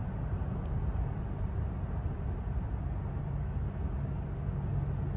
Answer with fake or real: real